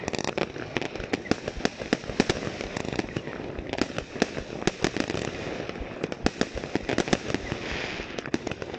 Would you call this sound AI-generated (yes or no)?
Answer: no